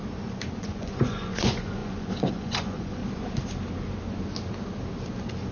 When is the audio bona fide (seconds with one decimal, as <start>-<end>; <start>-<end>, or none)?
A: 0.0-0.6; 3.0-5.5